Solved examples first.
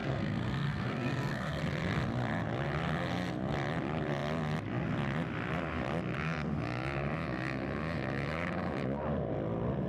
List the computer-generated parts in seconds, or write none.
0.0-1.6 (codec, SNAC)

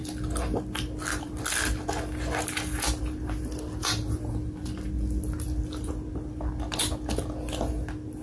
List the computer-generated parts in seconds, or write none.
none

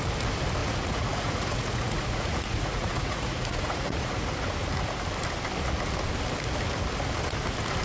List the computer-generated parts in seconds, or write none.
0.6-4.3 (vocoder, Vocos)

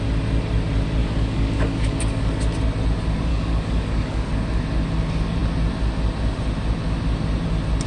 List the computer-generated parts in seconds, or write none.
1.0-2.4 (codec, DAC); 3.3-4.3

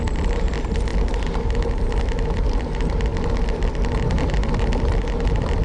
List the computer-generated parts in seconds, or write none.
none